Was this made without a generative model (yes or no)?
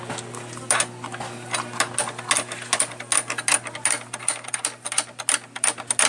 yes